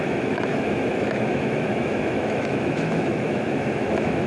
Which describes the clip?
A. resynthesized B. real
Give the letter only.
A